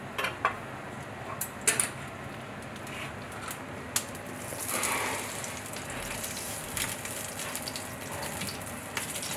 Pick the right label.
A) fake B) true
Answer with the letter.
B